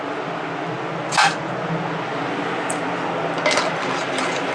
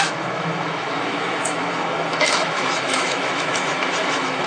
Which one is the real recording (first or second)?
first